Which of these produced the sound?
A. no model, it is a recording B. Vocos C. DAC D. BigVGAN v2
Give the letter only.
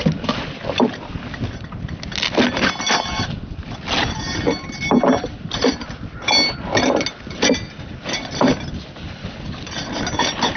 A